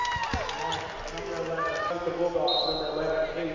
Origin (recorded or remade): recorded